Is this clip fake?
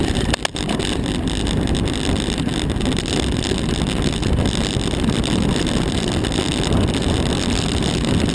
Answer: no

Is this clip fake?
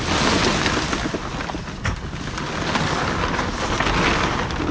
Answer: no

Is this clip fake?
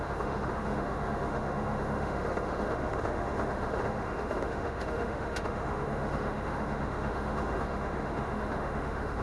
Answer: yes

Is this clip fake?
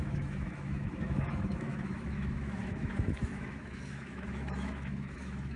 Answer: yes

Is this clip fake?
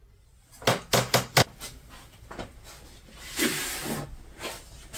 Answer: no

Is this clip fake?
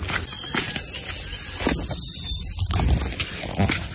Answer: no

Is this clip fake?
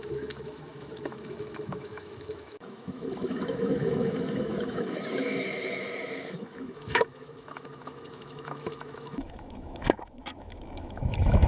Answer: yes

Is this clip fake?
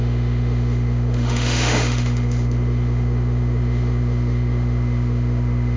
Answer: yes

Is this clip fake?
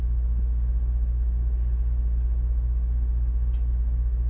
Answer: no